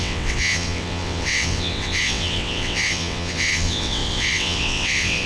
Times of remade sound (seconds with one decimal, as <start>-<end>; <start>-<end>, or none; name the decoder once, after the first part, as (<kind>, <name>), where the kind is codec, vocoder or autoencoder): 0.0-5.3 (vocoder, WaveNeXt)